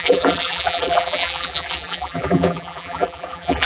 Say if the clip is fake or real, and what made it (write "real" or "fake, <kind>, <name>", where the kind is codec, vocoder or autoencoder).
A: fake, vocoder, BigVGAN v2